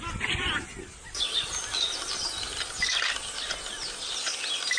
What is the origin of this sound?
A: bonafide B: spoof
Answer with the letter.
A